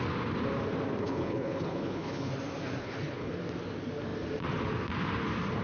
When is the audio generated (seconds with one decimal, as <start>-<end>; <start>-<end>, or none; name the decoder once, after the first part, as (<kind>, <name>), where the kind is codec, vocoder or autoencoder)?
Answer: 1.0-2.3 (codec, HILCodec); 2.8-3.4